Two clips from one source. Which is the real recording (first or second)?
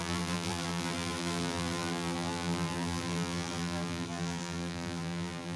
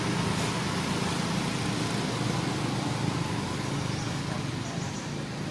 second